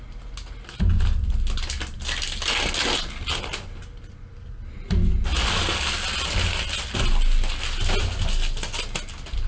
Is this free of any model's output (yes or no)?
yes